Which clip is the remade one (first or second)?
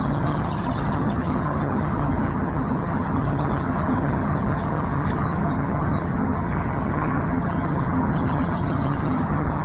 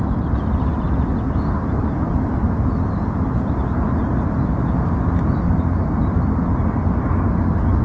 first